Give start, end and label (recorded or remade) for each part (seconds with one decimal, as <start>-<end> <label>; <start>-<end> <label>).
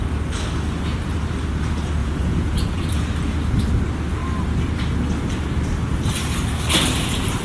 0.0-2.0 recorded; 2.0-3.1 remade; 3.1-7.4 recorded